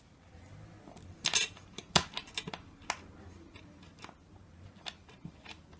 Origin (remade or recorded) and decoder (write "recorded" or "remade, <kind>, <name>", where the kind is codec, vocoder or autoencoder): recorded